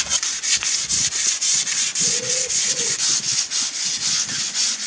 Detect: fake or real fake